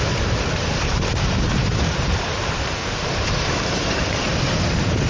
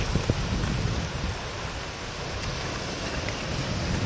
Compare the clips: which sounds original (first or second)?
second